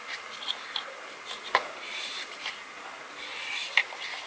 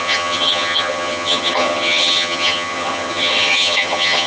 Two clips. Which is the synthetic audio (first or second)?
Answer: second